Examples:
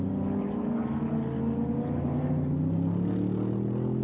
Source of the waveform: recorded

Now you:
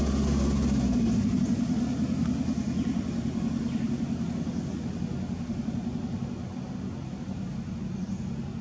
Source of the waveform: recorded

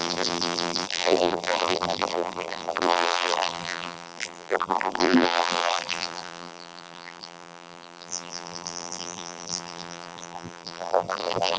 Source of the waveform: remade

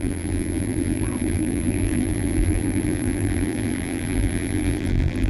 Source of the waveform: remade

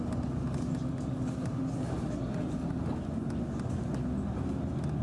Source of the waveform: recorded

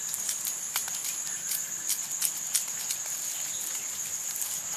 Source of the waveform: recorded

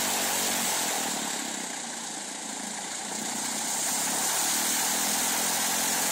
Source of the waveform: recorded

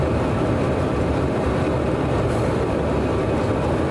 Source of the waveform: recorded